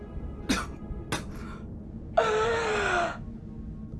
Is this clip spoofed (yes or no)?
no